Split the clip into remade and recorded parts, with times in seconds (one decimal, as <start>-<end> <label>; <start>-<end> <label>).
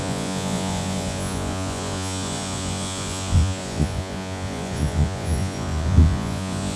0.0-6.8 remade